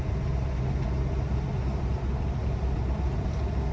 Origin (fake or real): real